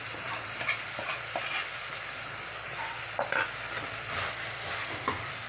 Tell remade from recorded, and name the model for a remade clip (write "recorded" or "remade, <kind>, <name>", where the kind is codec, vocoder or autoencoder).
remade, vocoder, BigVGAN v2